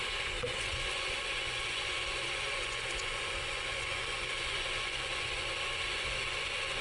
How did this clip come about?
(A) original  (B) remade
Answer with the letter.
B